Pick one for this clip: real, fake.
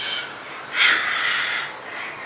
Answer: real